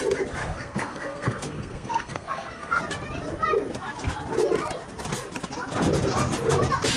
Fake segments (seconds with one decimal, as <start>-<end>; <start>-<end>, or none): 0.4-2.8